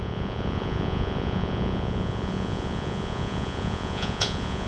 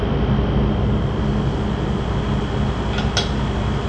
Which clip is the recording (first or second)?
second